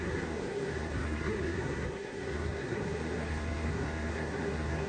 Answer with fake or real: fake